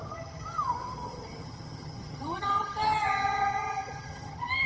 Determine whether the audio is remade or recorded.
remade